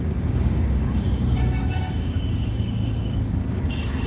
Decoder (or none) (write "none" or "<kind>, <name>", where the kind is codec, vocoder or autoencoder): codec, DAC